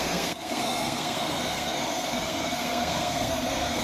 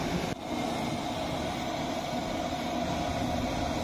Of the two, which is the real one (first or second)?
second